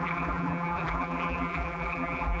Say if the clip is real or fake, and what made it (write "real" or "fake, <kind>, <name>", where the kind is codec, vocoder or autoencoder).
fake, vocoder, BigVGAN v2